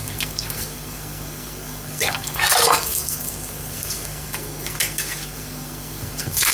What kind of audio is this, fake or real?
fake